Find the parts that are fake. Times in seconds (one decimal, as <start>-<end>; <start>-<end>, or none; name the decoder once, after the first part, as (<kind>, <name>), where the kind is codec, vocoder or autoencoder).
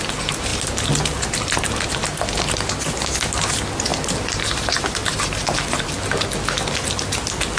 0.5-1.9 (vocoder, BigVGAN v2); 3.9-5.4